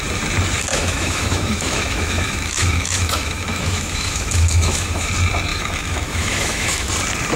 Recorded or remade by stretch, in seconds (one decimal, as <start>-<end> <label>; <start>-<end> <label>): 0.0-0.7 recorded; 0.7-5.1 remade; 5.1-5.5 recorded; 5.5-6.9 remade; 6.9-7.4 recorded